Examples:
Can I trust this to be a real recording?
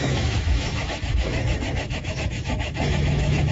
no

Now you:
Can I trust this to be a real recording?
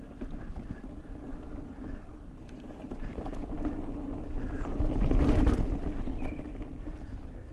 yes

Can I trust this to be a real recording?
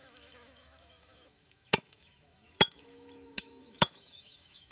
no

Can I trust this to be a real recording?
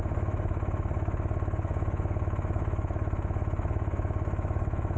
no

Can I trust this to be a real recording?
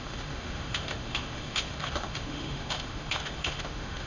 no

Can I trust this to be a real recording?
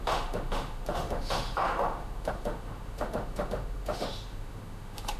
no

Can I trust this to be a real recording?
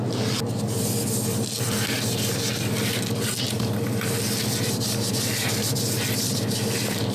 yes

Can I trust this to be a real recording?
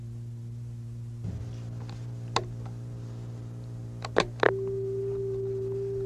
yes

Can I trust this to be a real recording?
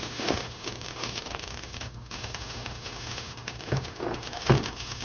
no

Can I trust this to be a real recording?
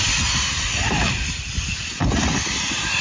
yes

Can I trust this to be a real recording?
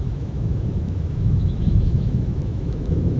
no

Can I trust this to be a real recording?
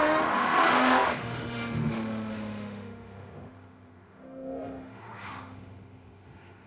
no